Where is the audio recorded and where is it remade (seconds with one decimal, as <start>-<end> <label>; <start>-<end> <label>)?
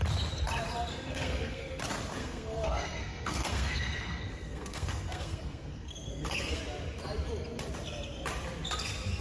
0.0-0.9 recorded; 0.9-1.8 remade; 1.8-2.2 recorded; 2.2-6.6 remade; 6.6-9.2 recorded